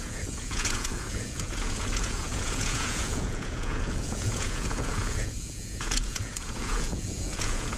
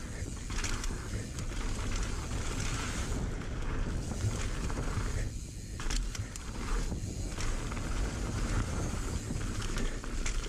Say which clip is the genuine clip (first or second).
second